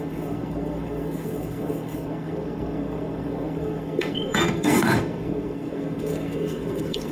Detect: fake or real fake